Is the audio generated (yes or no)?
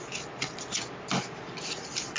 no